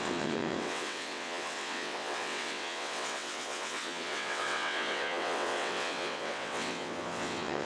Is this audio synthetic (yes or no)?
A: yes